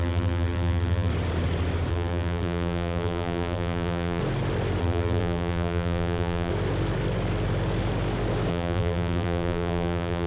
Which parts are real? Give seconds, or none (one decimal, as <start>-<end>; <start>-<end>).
1.1-1.9; 4.2-4.8; 6.5-8.5